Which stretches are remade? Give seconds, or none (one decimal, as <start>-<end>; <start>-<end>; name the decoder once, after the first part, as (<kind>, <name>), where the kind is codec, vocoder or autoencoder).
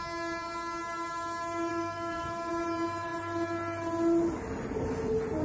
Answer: 1.7-2.5 (codec, DAC)